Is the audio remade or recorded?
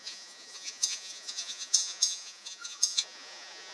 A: remade